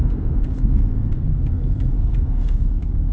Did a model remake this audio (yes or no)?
yes